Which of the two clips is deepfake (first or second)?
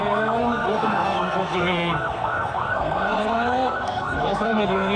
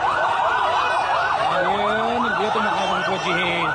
first